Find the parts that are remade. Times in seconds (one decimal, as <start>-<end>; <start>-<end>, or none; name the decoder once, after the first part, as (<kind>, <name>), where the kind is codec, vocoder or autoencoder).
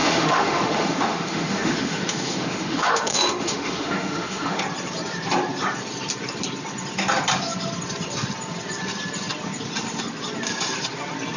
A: 0.0-4.6 (autoencoder, DAC-VAE)